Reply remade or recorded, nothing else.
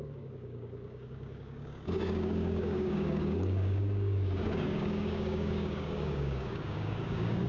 remade